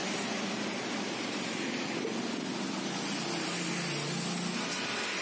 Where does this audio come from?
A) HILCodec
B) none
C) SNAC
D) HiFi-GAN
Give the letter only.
B